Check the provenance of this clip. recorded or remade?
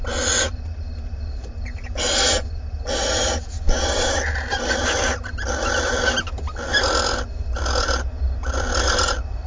recorded